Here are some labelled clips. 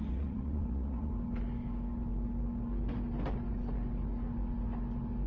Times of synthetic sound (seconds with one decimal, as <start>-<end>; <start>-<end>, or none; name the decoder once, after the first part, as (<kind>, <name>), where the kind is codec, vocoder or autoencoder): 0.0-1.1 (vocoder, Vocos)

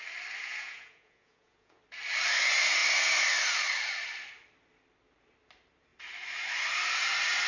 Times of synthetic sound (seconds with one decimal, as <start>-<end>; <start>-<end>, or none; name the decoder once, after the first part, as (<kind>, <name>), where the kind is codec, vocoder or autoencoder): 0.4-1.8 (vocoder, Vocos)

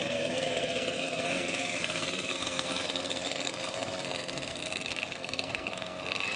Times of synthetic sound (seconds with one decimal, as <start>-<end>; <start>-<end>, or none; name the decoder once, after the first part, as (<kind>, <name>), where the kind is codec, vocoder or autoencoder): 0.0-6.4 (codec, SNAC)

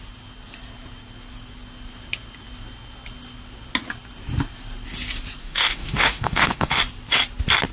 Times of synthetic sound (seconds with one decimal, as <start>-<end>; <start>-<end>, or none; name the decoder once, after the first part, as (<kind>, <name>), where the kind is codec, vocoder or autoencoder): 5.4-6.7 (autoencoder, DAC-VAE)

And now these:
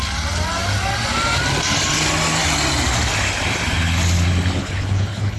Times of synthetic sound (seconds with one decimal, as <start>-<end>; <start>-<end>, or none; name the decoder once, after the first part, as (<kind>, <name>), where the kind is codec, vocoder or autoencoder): 4.6-5.4 (codec, HILCodec)

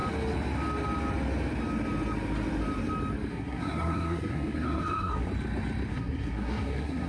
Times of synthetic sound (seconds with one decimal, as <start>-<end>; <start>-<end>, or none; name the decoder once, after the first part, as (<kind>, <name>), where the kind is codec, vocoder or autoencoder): 3.3-5.3 (codec, SNAC); 5.9-7.1